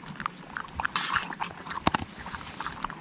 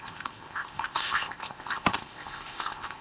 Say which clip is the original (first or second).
first